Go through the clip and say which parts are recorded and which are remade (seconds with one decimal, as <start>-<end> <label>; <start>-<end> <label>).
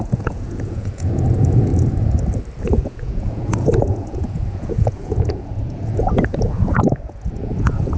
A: 0.0-1.7 remade; 1.7-2.6 recorded; 2.6-8.0 remade